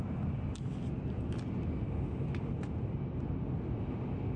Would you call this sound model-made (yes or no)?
no